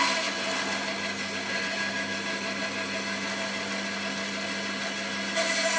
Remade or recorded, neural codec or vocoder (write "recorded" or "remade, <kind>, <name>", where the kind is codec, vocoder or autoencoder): recorded